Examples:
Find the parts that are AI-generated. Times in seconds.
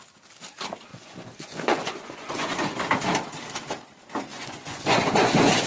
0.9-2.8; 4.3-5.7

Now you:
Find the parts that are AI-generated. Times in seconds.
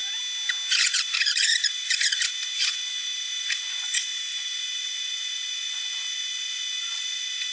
0.7-7.5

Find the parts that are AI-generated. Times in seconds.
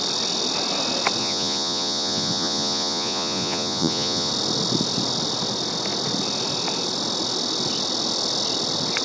1.2-4.3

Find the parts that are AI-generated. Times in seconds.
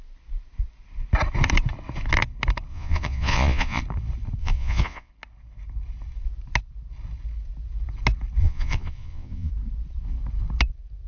2.7-3.8; 4.4-5.1; 8.4-9.5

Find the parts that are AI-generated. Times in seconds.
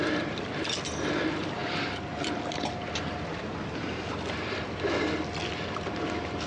none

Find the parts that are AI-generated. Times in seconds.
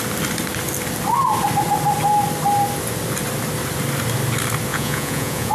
4.7-5.5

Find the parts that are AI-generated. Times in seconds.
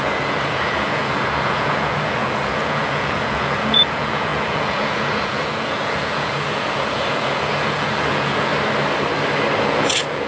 0.0-8.5; 9.6-10.3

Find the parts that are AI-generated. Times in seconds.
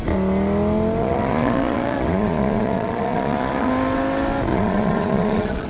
1.0-3.7; 4.5-5.7